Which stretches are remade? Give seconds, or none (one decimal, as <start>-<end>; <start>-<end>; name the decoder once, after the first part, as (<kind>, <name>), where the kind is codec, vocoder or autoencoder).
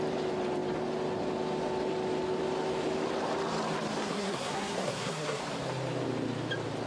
4.0-5.4 (codec, SNAC)